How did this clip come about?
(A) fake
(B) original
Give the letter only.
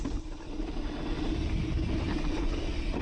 B